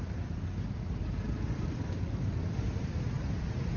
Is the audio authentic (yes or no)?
yes